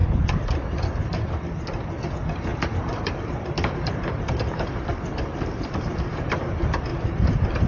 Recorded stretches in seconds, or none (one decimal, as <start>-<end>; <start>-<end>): 0.0-2.1; 2.5-3.2; 4.9-5.5

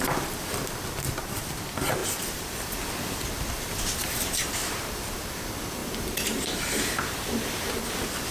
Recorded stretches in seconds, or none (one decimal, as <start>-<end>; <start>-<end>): 0.0-4.0; 4.8-5.8; 7.7-8.3

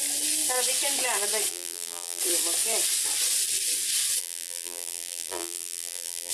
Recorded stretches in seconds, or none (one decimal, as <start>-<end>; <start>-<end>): 0.0-1.5; 2.2-4.2

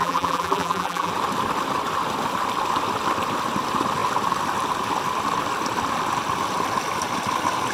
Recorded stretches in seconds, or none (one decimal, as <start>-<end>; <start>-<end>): 1.1-7.7

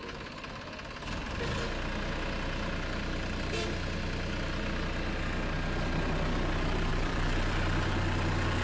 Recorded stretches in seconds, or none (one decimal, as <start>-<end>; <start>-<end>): 0.0-6.9; 7.9-8.6